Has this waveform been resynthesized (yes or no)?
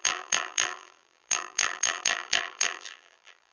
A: yes